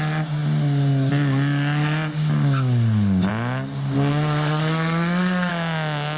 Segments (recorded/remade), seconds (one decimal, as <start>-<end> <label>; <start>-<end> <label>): 0.0-4.1 recorded; 4.1-5.5 remade; 5.5-6.2 recorded